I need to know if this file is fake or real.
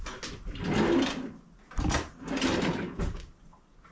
real